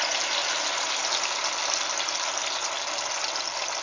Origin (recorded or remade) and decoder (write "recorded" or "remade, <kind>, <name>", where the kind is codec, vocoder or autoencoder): recorded